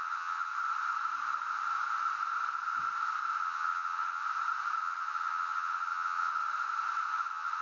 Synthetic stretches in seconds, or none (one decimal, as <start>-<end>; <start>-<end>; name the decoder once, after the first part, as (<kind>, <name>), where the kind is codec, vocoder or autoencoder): 0.0-0.5 (vocoder, HiFi-GAN); 3.4-4.2; 4.8-6.4; 7.1-7.6